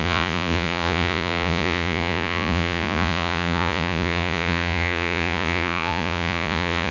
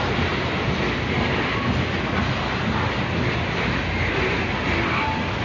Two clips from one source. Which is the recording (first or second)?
second